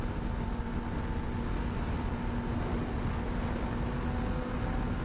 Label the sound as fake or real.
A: real